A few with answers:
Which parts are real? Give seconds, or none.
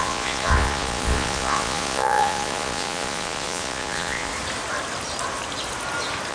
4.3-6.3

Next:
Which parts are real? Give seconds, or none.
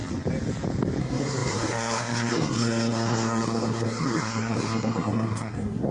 0.0-1.0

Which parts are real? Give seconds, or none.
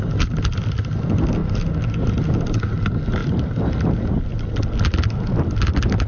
0.0-6.1